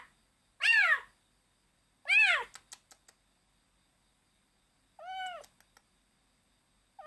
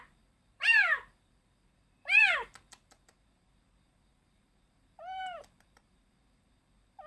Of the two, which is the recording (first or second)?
first